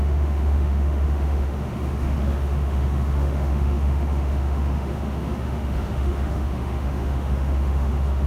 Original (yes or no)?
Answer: no